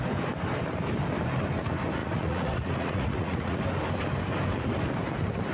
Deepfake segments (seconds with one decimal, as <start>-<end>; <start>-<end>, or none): 2.0-3.6